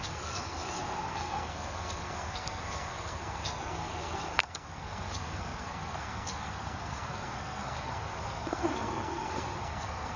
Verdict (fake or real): fake